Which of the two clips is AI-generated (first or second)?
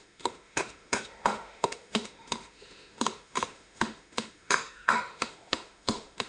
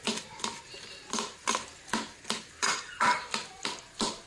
first